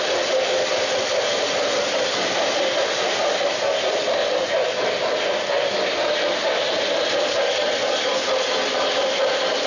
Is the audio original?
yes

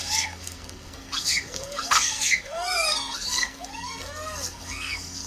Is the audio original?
no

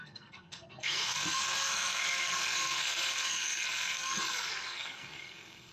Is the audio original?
no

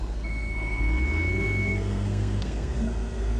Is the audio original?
no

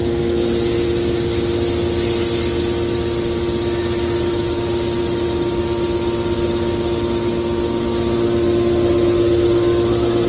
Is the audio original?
yes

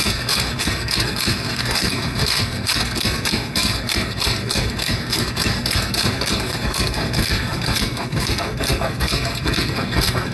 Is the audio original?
no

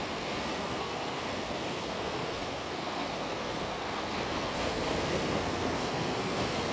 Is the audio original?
no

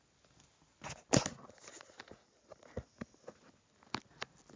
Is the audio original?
yes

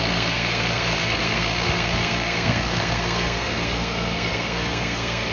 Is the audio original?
no